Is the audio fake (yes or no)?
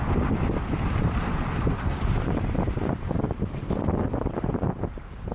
no